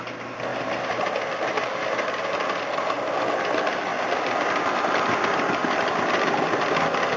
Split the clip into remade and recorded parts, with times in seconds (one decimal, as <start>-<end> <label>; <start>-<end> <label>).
0.0-7.2 remade